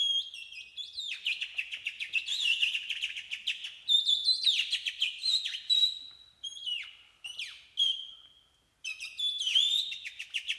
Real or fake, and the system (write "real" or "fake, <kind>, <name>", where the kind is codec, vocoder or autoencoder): real